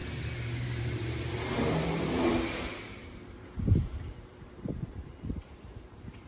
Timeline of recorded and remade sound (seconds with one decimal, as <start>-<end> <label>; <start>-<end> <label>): 0.0-2.3 remade; 2.3-3.0 recorded; 3.0-6.3 remade

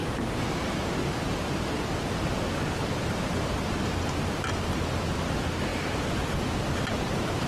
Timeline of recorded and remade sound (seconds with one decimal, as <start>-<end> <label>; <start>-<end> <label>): 0.0-1.7 remade; 1.7-7.5 recorded

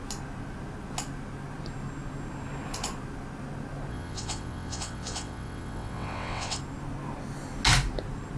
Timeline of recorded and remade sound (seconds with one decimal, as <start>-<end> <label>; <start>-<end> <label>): 0.0-3.9 recorded; 3.9-6.6 remade; 6.6-8.4 recorded

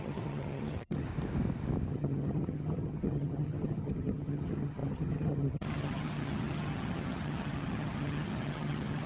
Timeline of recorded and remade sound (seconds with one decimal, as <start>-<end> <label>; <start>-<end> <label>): 0.0-1.1 remade; 1.1-1.9 recorded; 1.9-9.1 remade

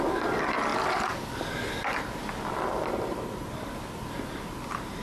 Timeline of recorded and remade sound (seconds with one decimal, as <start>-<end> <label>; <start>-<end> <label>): 0.0-5.0 recorded

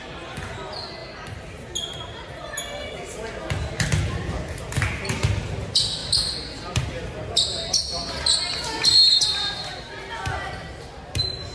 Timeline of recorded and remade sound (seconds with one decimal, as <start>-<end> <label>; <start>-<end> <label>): 0.0-11.5 recorded